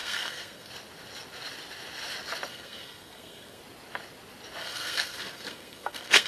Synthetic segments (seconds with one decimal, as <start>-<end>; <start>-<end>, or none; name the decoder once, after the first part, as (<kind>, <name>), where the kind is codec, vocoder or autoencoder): 0.0-0.7 (codec, SNAC); 2.5-3.6; 4.6-6.3